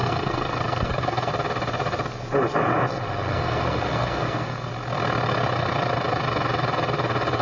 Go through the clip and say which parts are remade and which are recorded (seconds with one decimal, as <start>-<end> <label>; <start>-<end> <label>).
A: 0.0-1.3 remade; 1.3-3.3 recorded; 3.3-4.7 remade; 4.7-7.4 recorded

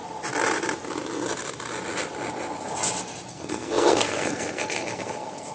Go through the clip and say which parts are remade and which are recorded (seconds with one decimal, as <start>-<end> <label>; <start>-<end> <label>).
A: 0.0-3.3 recorded; 3.3-5.5 remade